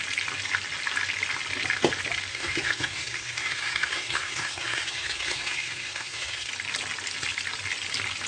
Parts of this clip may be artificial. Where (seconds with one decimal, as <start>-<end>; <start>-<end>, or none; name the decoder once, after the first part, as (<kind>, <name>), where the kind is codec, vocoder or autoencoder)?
2.3-6.5 (codec, SNAC)

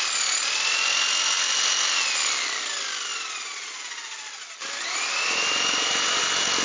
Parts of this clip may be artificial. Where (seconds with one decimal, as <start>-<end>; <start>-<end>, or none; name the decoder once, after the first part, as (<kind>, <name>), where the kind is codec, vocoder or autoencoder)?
none